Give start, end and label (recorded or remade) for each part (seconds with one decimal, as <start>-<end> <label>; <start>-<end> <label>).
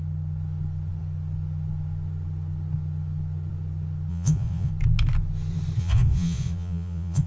0.0-4.1 recorded; 4.1-4.7 remade; 4.7-5.8 recorded; 5.8-7.3 remade